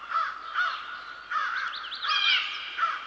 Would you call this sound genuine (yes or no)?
yes